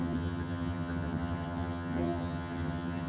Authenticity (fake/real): fake